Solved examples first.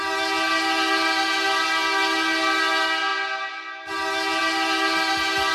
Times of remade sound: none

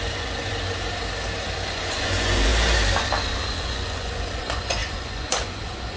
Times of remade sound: 0.0-0.5 (vocoder, Vocos); 1.7-2.5; 3.4-6.0

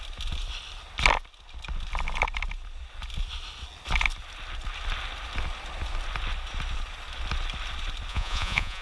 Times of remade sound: 8.1-8.8 (vocoder, Vocos)

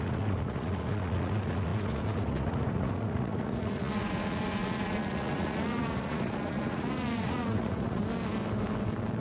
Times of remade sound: 0.0-8.0 (vocoder, Vocos)

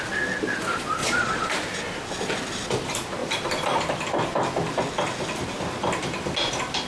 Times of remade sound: 1.0-1.5 (vocoder, Vocos)

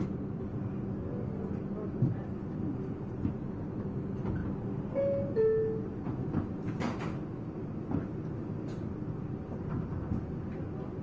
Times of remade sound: none